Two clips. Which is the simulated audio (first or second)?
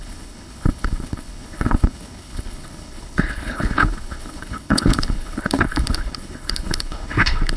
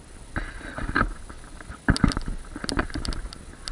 first